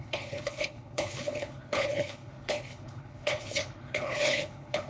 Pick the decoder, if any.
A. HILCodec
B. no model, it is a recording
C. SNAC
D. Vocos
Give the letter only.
A